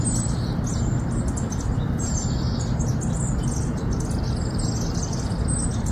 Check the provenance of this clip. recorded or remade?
recorded